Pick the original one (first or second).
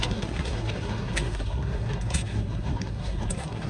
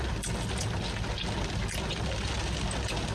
second